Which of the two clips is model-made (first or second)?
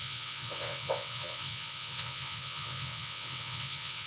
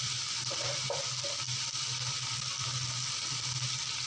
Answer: first